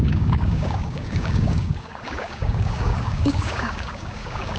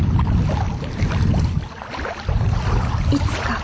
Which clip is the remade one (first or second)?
first